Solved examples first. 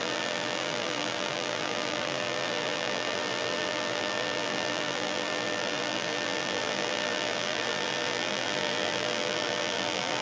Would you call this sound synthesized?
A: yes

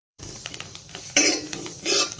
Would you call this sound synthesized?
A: yes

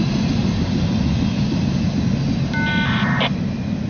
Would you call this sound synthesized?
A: no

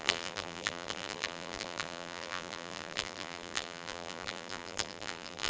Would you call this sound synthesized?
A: yes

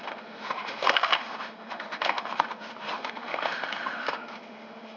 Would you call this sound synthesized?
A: yes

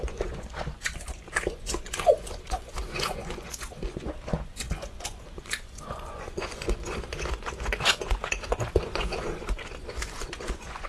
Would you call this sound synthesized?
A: yes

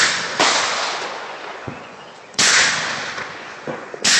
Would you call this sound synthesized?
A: yes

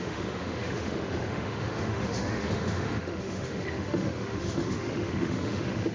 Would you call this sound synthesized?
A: yes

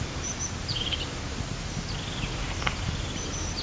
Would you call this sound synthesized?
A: no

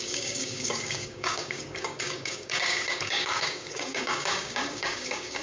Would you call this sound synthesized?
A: yes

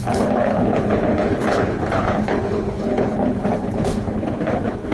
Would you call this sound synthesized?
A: yes